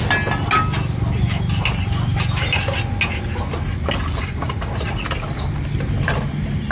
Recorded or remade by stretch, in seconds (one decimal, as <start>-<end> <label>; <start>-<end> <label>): 0.0-4.2 recorded; 4.2-4.7 remade; 4.7-6.7 recorded